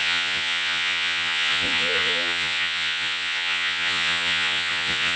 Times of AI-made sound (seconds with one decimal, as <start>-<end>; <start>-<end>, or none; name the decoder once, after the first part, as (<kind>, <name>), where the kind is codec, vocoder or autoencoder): 0.0-5.2 (vocoder, Vocos)